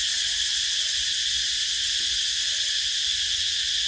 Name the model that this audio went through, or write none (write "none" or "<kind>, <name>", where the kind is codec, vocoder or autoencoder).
none